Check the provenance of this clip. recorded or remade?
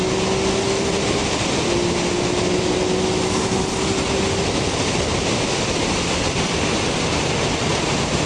recorded